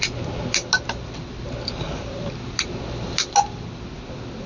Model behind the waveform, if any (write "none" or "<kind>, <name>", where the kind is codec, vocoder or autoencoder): none